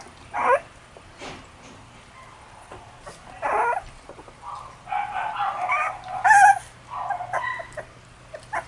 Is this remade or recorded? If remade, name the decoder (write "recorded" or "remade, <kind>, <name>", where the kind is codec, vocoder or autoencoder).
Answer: recorded